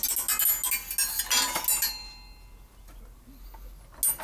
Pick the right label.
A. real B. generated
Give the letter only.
A